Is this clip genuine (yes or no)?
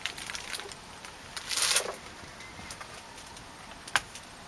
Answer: yes